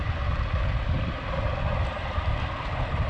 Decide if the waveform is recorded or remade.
recorded